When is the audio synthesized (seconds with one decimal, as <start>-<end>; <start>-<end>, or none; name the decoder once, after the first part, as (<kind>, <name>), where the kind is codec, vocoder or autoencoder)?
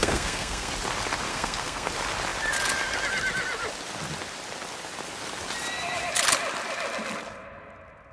0.0-0.7 (codec, SNAC); 1.3-1.9